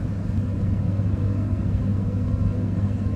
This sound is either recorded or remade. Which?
remade